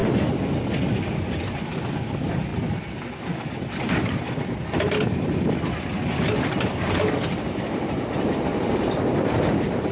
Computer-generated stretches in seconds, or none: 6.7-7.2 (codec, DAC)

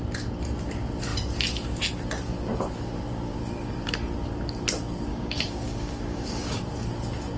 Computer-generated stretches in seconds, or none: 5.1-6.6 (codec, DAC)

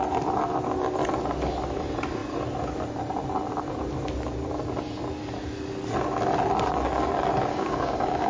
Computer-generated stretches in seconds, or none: 7.5-8.3 (codec, DAC)